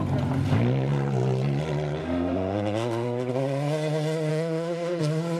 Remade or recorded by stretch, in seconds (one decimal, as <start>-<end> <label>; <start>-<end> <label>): 0.0-2.0 recorded; 2.0-3.3 remade; 3.3-4.3 recorded; 4.3-5.0 remade; 5.0-5.4 recorded